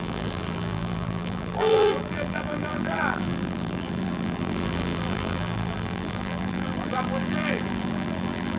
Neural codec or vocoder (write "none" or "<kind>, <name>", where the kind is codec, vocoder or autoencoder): vocoder, BigVGAN v2